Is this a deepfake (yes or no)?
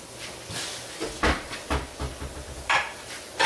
no